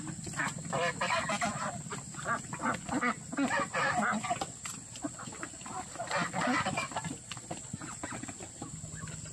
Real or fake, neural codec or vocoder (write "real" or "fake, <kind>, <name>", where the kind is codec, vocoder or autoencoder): real